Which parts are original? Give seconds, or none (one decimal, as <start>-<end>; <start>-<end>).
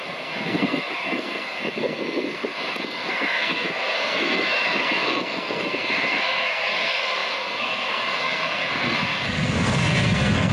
none